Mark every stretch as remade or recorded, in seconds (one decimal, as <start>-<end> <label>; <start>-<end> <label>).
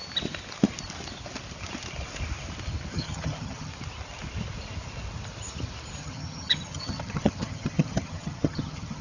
0.0-2.9 recorded; 2.9-3.7 remade; 3.7-6.0 recorded; 6.0-9.0 remade